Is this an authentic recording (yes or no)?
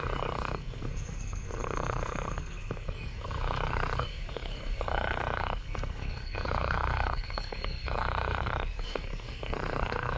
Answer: no